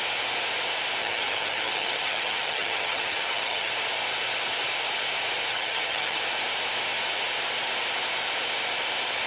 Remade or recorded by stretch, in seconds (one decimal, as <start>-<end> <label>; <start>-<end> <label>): 0.0-1.0 recorded; 1.0-3.7 remade; 3.7-5.5 recorded; 5.5-6.2 remade; 6.2-9.3 recorded